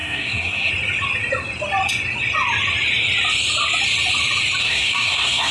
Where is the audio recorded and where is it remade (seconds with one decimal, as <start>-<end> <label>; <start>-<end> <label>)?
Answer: 0.0-0.7 remade; 0.7-4.6 recorded; 4.6-5.5 remade